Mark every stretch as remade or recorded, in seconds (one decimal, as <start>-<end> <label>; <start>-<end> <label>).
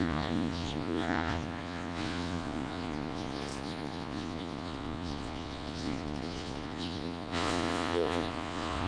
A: 0.0-8.9 remade